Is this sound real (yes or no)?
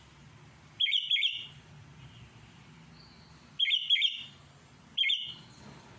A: yes